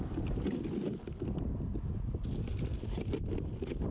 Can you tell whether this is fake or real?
real